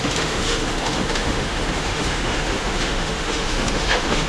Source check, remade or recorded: remade